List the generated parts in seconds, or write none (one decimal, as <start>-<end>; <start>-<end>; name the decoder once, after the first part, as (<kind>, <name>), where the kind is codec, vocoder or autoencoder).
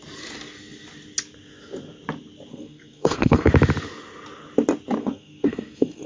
2.5-3.5 (codec, SNAC); 5.0-6.1